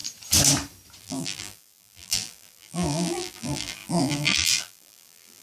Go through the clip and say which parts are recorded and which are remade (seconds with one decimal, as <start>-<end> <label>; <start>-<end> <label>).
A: 0.0-1.0 recorded; 1.0-5.4 remade

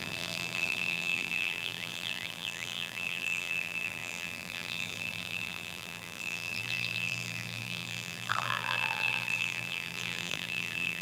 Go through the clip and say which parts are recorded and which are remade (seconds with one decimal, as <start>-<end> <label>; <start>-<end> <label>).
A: 0.0-11.0 remade

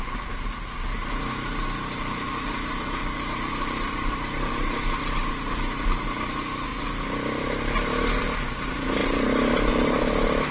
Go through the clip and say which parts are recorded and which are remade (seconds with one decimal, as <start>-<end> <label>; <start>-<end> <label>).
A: 0.0-0.9 remade; 0.9-2.0 recorded; 2.0-6.7 remade; 6.7-8.2 recorded; 8.2-10.5 remade